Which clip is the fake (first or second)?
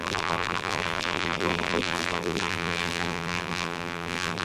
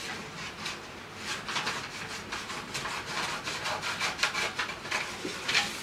first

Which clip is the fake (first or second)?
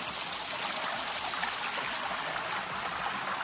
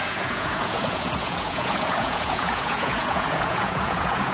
second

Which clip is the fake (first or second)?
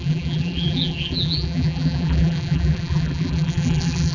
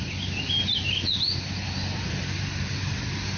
first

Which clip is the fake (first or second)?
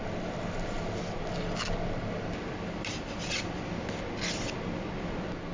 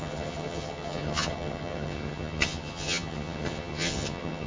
second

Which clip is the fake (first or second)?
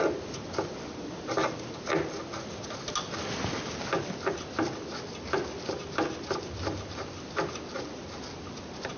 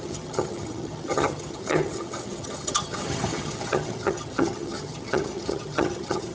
second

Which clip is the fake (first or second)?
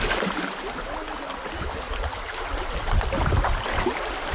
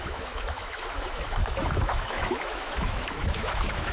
second